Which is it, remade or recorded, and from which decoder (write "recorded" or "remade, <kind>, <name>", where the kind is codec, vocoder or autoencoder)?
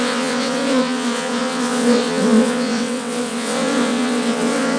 remade, vocoder, WaveNeXt